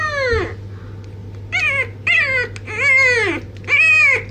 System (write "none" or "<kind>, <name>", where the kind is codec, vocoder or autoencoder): none